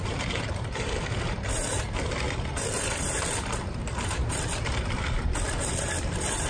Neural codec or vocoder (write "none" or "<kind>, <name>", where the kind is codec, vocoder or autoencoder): vocoder, BigVGAN v2